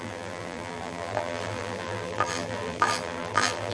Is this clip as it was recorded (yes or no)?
no